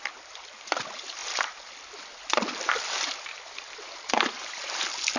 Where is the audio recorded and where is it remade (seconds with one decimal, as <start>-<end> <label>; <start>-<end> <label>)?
0.0-5.2 remade